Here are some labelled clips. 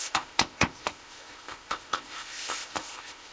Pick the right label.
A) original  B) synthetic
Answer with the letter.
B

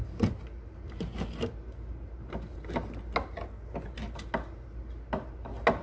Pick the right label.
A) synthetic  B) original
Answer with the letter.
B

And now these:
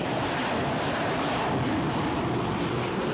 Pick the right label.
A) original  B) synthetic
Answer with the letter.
A